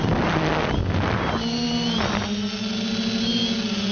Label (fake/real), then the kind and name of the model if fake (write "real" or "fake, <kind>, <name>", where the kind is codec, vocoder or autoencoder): real